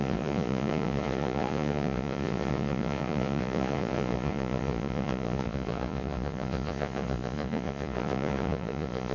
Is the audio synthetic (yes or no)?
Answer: yes